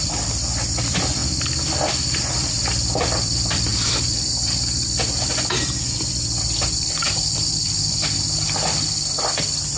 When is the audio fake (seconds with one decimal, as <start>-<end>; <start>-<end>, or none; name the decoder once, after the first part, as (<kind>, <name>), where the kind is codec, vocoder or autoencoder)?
0.0-1.2 (vocoder, BigVGAN v2); 2.2-9.8